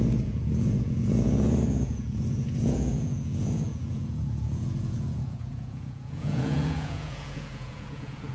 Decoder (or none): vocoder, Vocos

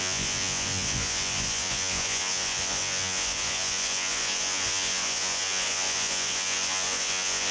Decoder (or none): vocoder, Vocos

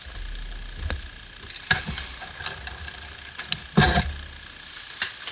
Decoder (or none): none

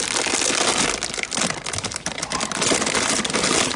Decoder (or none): none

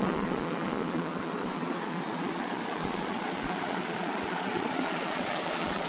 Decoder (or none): vocoder, Vocos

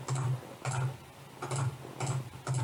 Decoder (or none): none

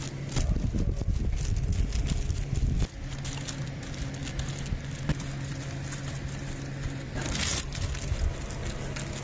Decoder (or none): none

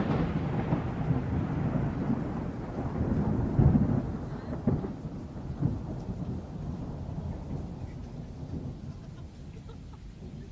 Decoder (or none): none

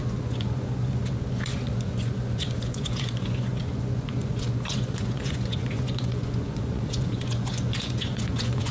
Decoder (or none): vocoder, Vocos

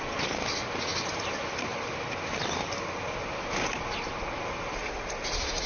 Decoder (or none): none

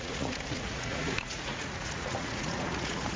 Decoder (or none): vocoder, Vocos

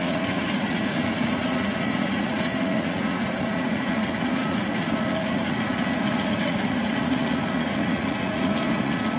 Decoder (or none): vocoder, Vocos